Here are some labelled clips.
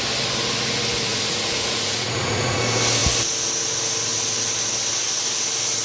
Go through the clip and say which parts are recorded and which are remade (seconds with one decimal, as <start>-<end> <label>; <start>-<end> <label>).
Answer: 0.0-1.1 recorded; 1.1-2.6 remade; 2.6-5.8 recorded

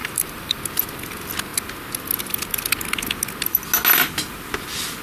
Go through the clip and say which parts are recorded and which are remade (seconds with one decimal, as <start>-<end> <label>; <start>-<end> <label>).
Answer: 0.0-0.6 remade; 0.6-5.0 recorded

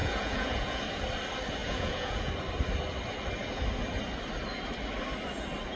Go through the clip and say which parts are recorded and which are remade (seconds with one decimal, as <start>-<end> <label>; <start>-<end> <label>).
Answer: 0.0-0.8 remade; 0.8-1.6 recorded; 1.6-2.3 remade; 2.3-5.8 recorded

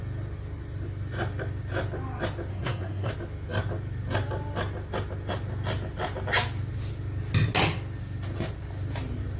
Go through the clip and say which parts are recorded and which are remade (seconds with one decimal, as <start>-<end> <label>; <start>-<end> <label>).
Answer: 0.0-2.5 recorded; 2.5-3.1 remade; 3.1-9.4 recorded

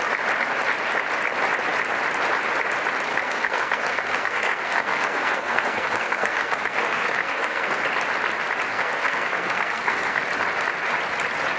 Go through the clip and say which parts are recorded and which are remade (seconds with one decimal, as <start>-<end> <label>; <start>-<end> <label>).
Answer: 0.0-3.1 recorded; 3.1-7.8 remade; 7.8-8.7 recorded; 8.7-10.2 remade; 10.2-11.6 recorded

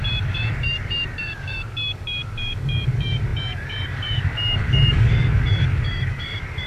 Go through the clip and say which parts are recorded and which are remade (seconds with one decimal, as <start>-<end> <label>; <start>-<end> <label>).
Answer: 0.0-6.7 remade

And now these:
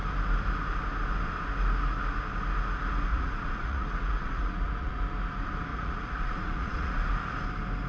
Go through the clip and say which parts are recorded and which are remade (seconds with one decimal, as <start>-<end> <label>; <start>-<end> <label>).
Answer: 0.0-3.1 recorded; 3.1-5.0 remade; 5.0-5.7 recorded; 5.7-7.1 remade; 7.1-7.9 recorded